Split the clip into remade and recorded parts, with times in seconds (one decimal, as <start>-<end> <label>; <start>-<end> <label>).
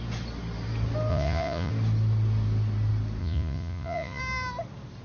0.0-1.1 recorded; 1.1-1.7 remade; 1.7-3.2 recorded; 3.2-4.2 remade; 4.2-5.0 recorded